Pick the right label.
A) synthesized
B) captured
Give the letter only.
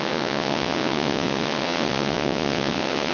A